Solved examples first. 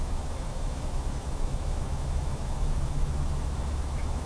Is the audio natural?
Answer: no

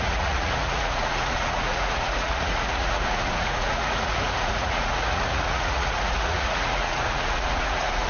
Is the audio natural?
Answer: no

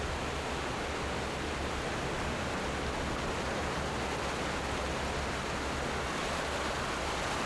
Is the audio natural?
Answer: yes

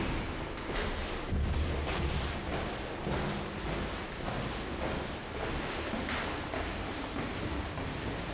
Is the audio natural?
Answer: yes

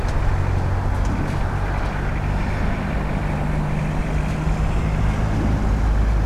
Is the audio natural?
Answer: yes